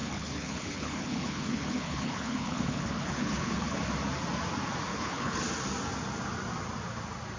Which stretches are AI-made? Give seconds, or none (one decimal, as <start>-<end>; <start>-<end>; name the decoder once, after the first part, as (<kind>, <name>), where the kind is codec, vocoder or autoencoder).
0.0-3.8 (codec, HILCodec); 4.9-5.4